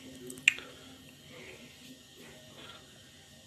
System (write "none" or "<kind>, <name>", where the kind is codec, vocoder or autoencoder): none